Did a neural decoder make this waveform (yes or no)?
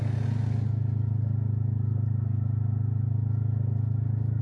no